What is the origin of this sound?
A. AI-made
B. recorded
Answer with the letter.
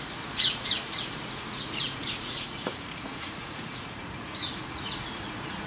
A